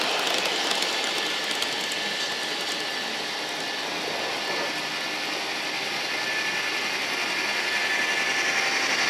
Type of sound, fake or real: real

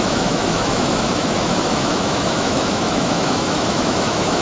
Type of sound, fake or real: fake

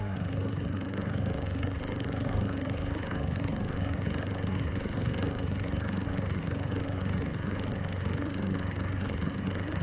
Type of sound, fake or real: fake